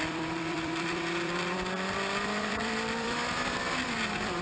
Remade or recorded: remade